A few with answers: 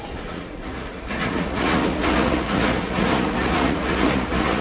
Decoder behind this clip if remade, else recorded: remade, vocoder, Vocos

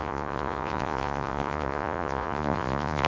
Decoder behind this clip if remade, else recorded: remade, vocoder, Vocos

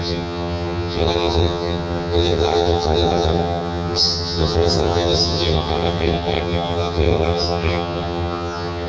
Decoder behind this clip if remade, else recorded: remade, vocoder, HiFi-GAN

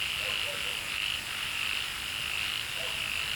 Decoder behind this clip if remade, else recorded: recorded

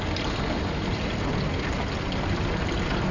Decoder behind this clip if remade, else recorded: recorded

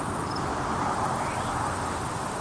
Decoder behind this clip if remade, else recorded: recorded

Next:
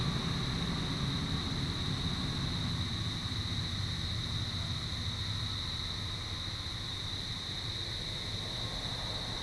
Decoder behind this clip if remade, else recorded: recorded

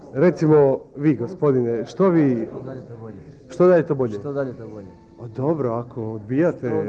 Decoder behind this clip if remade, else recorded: recorded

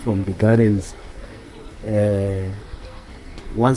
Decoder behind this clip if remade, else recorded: remade, codec, SNAC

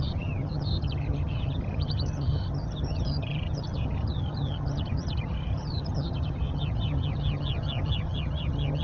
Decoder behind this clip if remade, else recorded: remade, vocoder, HiFi-GAN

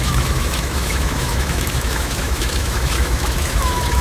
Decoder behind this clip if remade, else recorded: remade, autoencoder, DAC-VAE